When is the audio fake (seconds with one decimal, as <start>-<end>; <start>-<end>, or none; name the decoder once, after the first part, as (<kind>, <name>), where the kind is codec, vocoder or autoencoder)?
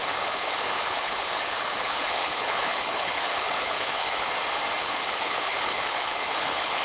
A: 0.0-4.3 (codec, HILCodec); 4.8-6.8